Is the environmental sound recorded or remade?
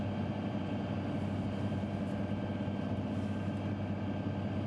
recorded